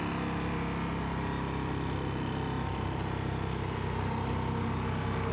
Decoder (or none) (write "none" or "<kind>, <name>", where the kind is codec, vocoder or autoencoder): none